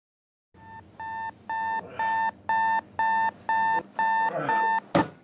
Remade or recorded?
recorded